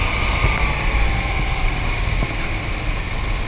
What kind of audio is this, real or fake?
real